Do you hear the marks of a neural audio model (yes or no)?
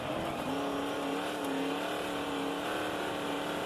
no